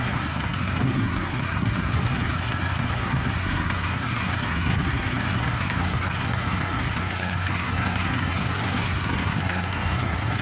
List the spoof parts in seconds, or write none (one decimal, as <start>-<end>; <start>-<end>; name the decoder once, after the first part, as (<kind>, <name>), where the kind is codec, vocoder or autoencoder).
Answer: 0.0-10.4 (codec, SNAC)